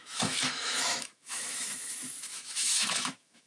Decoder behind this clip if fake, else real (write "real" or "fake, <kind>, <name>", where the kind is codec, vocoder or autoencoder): fake, autoencoder, DAC-VAE